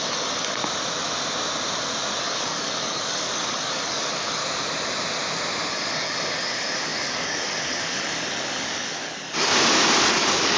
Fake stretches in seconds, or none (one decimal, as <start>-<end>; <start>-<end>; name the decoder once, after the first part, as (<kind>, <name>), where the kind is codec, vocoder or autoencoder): 0.0-0.6 (codec, DAC); 2.2-4.4; 5.7-9.5; 10.1-10.6